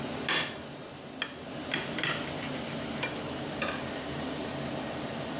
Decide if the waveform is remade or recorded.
recorded